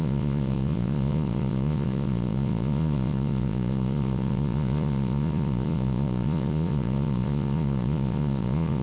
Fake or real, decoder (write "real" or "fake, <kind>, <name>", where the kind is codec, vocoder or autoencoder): fake, vocoder, Vocos